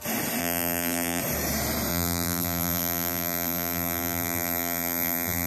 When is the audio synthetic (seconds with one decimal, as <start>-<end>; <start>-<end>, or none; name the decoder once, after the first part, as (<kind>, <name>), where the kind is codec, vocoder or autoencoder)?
0.4-1.2 (vocoder, BigVGAN v2); 1.9-5.5